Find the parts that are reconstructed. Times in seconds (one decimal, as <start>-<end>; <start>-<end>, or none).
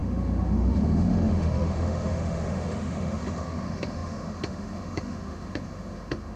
0.0-6.4